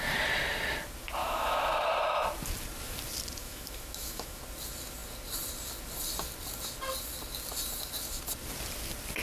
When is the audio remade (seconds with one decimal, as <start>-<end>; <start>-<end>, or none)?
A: 1.2-1.7; 3.4-4.4